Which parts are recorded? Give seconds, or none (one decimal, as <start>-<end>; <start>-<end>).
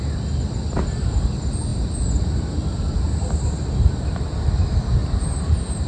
0.0-5.0